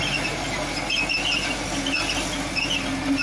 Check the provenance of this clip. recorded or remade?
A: recorded